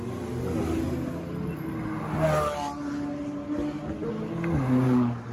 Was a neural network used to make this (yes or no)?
no